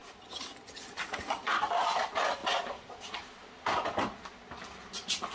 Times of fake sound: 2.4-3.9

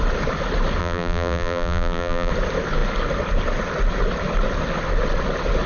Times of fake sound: 0.8-2.3